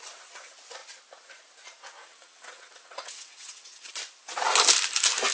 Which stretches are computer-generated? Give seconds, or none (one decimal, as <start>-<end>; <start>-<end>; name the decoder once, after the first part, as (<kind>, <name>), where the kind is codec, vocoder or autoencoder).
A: 2.0-3.9 (vocoder, WaveNeXt)